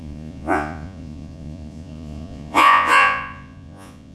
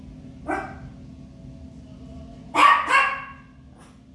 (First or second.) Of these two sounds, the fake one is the first